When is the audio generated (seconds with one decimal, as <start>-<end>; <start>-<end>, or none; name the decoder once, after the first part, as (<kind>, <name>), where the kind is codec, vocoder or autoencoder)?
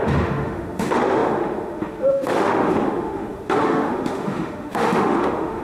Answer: 0.0-5.6 (autoencoder, DAC-VAE)